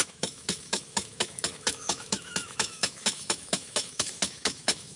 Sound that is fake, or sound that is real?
fake